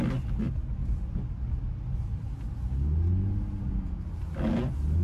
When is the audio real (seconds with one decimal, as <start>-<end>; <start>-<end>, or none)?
0.0-5.0